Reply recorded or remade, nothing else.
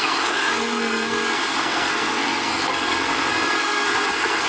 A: remade